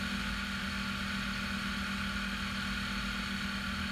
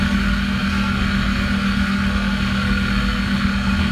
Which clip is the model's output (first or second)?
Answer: second